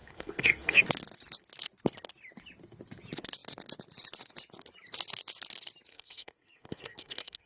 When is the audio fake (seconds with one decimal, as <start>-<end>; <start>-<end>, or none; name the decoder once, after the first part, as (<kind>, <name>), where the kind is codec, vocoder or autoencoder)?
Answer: 0.0-0.8 (codec, SNAC); 5.9-7.5